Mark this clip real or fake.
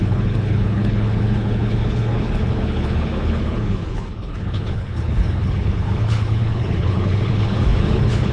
fake